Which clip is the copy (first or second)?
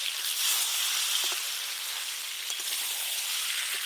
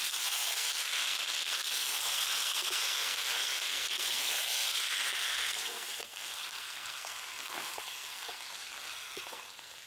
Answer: second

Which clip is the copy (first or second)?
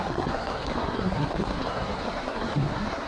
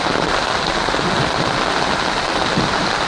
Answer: first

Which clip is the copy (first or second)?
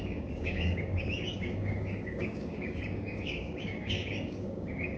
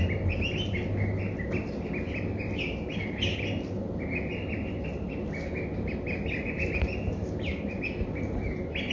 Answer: first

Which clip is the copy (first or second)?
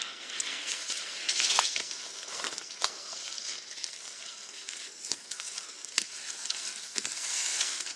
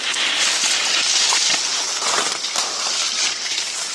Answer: first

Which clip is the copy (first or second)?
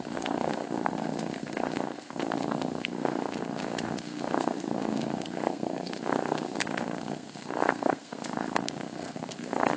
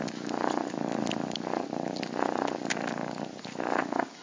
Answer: first